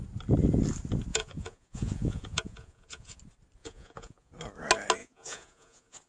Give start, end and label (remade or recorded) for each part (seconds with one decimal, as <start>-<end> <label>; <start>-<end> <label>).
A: 0.0-1.1 recorded; 1.1-3.2 remade; 3.2-3.6 recorded; 3.6-4.3 remade; 4.3-5.0 recorded; 5.0-6.1 remade